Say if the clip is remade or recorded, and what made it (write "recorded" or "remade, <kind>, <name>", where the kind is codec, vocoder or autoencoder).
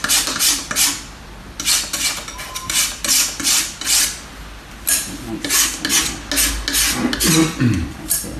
recorded